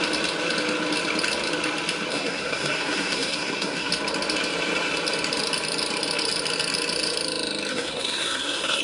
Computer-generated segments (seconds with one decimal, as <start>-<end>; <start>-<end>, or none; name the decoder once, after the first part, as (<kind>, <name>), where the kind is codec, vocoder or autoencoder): 2.1-3.9 (codec, SNAC); 7.7-8.8